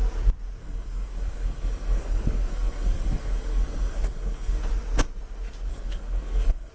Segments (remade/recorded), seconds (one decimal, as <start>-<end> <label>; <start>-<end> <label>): 0.0-0.6 recorded; 0.6-4.6 remade; 4.6-5.7 recorded; 5.7-6.7 remade